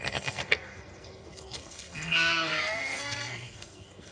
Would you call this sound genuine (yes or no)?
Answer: no